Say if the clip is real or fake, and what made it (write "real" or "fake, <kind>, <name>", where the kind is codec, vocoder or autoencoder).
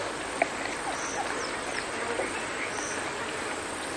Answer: real